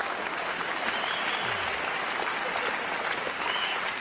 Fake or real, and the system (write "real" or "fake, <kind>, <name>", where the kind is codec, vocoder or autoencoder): real